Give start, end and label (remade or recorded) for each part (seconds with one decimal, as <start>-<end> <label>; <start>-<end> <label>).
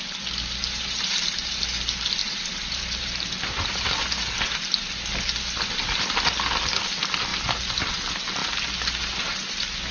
0.0-0.6 recorded; 0.6-1.6 remade; 1.6-2.2 recorded; 2.2-3.7 remade; 3.7-7.3 recorded; 7.3-7.9 remade; 7.9-9.9 recorded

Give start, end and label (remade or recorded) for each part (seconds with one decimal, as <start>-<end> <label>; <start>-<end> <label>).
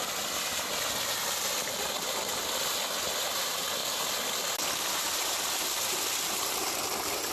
0.0-7.3 recorded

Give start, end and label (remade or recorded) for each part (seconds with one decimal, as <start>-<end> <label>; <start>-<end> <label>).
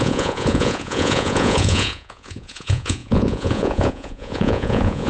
0.0-5.1 remade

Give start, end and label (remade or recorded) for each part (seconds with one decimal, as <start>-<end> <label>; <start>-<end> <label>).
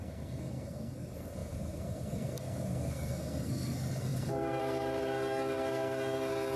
0.0-6.6 remade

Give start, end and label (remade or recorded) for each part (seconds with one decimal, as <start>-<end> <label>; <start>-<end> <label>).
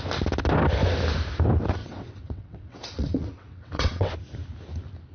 0.0-1.8 recorded; 1.8-4.1 remade; 4.1-5.1 recorded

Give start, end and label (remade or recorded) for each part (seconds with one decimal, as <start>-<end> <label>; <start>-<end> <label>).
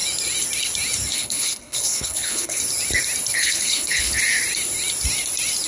0.0-1.1 recorded; 1.1-2.6 remade; 2.6-3.3 recorded; 3.3-4.2 remade; 4.2-5.7 recorded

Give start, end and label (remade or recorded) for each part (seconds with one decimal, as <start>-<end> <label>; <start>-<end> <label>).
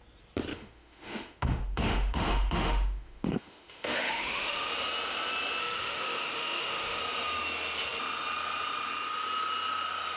0.0-0.5 recorded; 0.5-4.7 remade; 4.7-5.6 recorded; 5.6-7.0 remade; 7.0-10.2 recorded